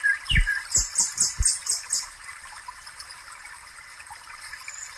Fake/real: real